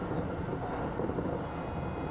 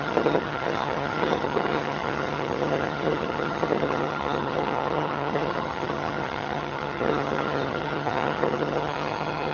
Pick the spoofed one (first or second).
second